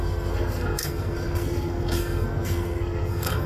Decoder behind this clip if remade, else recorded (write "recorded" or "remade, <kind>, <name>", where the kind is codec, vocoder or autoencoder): remade, codec, SNAC